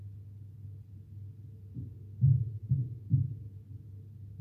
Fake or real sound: real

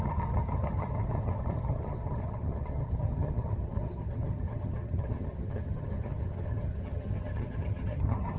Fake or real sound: fake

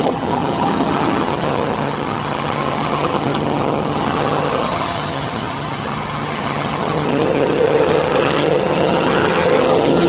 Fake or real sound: fake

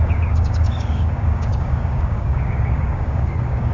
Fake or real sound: fake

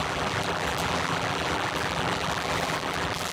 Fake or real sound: fake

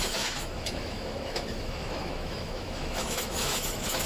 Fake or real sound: fake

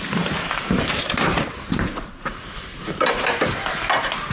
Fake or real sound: fake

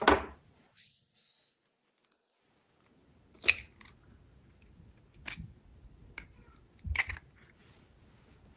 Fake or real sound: real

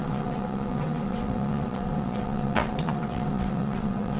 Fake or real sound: fake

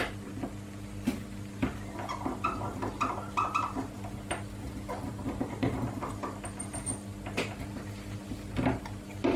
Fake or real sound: real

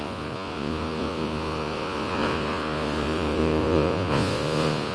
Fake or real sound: fake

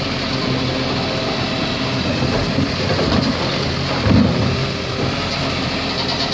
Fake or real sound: real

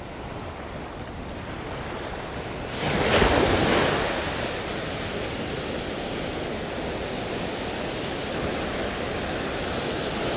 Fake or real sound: real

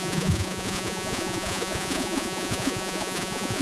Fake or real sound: fake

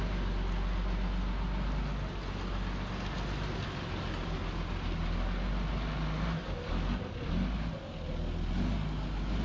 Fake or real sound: real